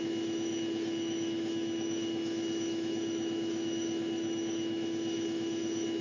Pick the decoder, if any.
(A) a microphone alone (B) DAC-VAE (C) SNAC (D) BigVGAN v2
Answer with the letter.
B